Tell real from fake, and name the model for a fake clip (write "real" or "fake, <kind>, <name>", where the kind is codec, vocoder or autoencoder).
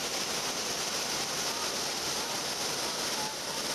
real